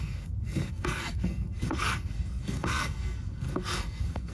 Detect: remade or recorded remade